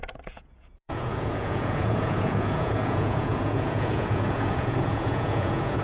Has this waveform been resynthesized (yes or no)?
yes